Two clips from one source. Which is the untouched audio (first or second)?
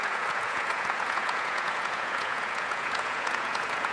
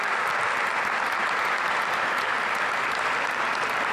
second